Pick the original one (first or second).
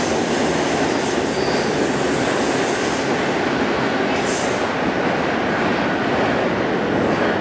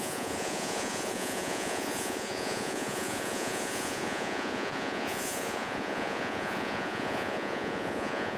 first